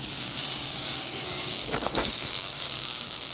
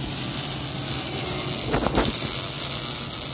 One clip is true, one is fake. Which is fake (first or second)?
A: first